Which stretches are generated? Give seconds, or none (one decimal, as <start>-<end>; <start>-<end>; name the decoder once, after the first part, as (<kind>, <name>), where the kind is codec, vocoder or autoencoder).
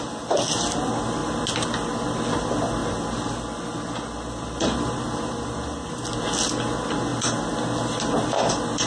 none